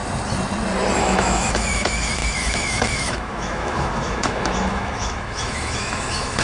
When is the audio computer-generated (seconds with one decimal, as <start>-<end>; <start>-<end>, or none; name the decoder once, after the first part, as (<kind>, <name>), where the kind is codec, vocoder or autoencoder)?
1.0-6.4 (autoencoder, DAC-VAE)

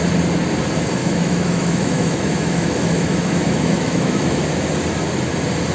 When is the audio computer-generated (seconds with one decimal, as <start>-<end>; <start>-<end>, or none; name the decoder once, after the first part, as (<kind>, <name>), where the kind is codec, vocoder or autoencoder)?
1.0-4.4 (autoencoder, DAC-VAE)

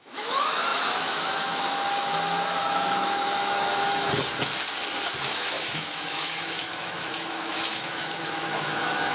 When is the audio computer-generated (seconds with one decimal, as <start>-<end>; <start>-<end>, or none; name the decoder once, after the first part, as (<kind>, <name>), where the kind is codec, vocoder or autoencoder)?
0.0-3.7 (autoencoder, DAC-VAE); 5.2-9.1

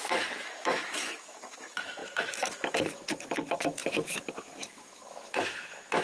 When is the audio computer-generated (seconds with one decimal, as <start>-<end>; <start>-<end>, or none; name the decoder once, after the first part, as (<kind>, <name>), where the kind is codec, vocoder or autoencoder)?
0.0-6.0 (autoencoder, DAC-VAE)